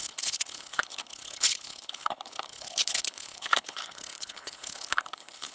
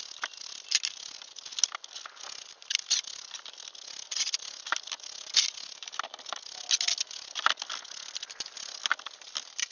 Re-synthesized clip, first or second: first